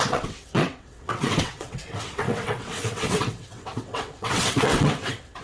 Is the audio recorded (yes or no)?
no